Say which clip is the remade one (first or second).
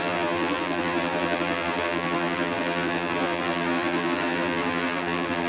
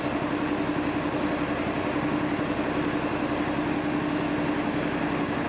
first